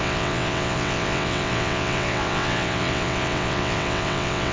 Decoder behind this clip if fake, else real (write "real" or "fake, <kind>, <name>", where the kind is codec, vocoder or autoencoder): fake, vocoder, WaveNeXt